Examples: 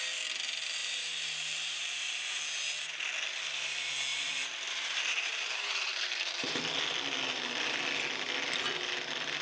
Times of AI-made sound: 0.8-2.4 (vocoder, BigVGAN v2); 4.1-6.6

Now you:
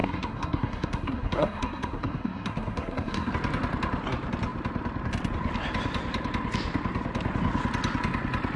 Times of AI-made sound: 0.0-3.3 (codec, SNAC)

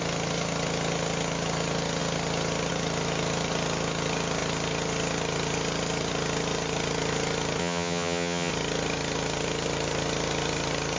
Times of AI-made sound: 7.6-8.5 (vocoder, HiFi-GAN)

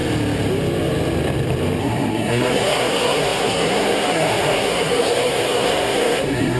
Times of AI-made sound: 1.8-6.6 (codec, SNAC)

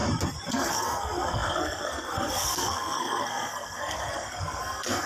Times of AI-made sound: 0.5-5.1 (codec, SNAC)

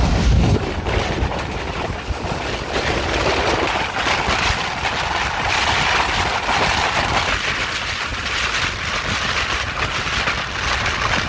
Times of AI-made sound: none